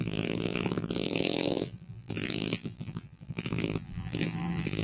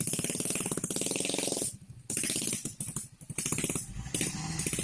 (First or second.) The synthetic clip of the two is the first